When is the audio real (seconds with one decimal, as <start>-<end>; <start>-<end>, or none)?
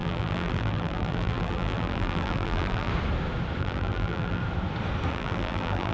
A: 2.9-3.6; 4.4-5.1